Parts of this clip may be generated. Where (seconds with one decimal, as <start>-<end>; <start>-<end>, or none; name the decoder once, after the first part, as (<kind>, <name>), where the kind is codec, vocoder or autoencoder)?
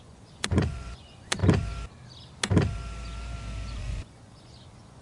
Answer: 0.0-1.4 (vocoder, Vocos); 3.8-5.0